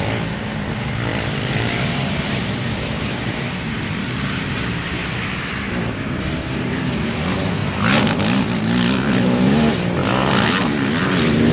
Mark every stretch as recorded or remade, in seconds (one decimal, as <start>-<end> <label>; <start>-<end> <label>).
0.0-1.1 recorded; 1.1-4.4 remade; 4.4-11.5 recorded